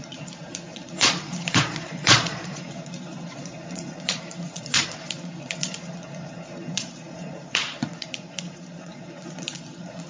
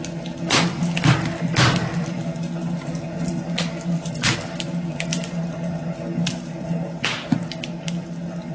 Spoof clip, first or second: first